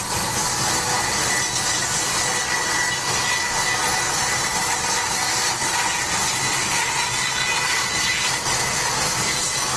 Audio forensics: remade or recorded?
recorded